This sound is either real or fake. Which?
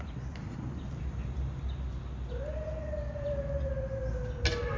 real